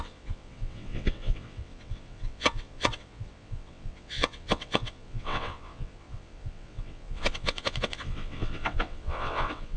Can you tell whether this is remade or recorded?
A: remade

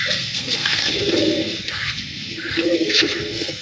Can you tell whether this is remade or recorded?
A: remade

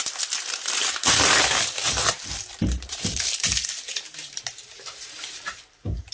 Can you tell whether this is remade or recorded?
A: remade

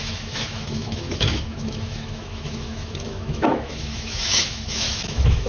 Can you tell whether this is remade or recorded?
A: remade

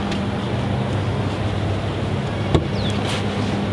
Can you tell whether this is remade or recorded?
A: recorded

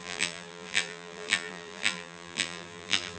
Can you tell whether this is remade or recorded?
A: remade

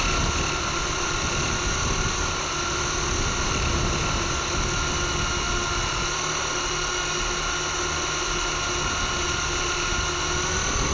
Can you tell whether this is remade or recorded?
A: recorded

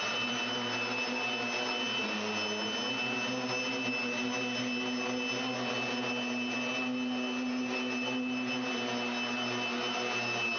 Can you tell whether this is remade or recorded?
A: recorded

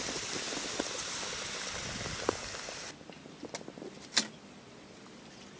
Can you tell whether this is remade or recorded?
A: recorded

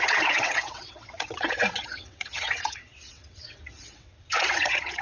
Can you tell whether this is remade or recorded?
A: remade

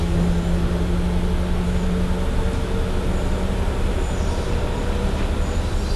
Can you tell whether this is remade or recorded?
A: recorded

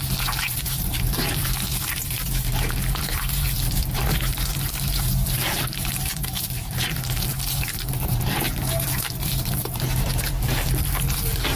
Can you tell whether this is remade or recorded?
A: remade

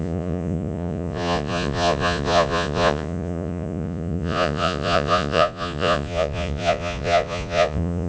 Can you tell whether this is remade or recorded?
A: remade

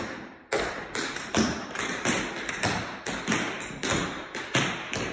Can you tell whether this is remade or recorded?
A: recorded